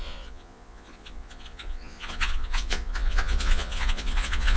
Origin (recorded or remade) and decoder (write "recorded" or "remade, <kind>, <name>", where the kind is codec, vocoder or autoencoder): remade, vocoder, Vocos